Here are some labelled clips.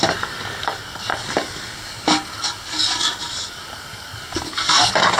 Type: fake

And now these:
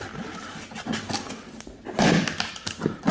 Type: real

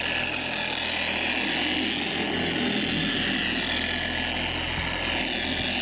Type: real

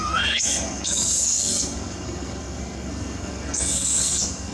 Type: fake